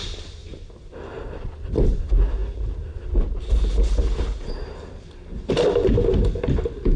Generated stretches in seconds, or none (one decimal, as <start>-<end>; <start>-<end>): 0.4-2.0